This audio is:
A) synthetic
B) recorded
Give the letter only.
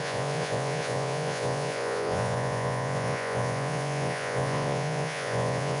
A